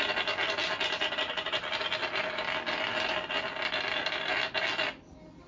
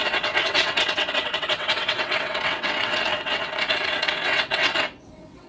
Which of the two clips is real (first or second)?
first